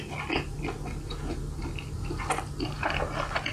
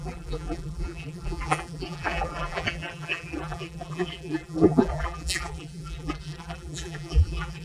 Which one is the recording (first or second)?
first